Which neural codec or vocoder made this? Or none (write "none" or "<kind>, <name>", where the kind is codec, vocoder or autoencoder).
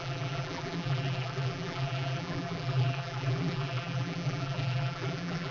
vocoder, BigVGAN v2